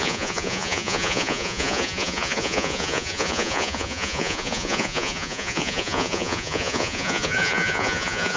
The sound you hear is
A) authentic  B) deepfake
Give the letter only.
B